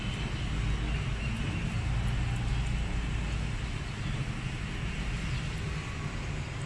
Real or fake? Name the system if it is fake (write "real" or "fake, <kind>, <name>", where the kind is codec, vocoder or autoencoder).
real